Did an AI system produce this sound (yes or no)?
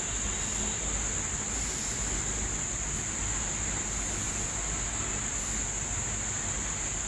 no